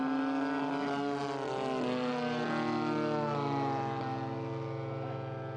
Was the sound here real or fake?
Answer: real